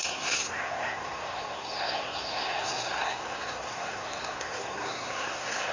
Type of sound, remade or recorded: remade